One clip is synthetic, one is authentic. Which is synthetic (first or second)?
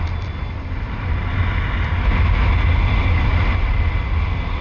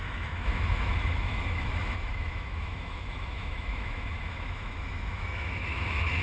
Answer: second